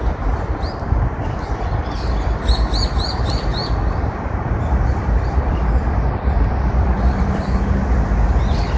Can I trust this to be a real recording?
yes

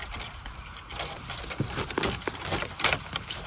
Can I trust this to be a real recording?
yes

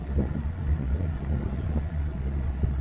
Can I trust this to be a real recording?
no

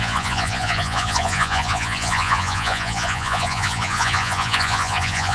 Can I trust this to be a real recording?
no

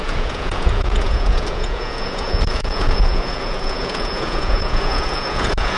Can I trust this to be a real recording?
no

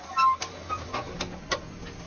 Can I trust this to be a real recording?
yes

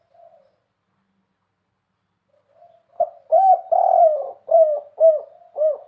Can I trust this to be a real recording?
yes